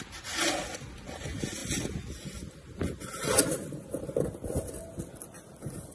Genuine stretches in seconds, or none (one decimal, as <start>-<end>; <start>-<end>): 0.0-5.9